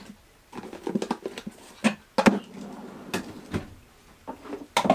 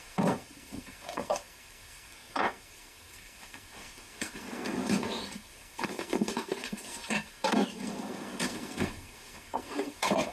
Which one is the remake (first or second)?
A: second